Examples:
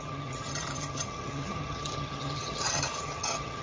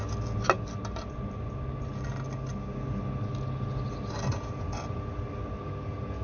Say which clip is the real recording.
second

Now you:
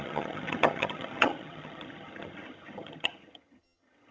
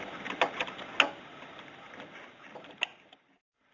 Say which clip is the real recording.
second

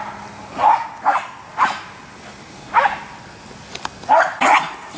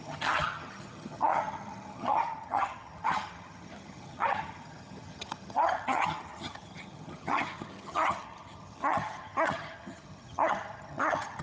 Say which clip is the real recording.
first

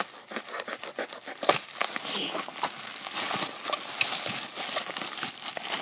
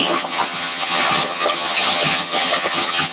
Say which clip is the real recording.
first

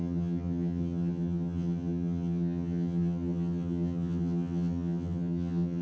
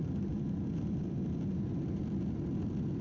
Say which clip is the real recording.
second